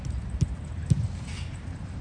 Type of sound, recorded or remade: recorded